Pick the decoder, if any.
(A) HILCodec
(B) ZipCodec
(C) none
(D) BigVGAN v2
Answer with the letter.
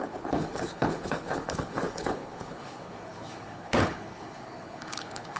A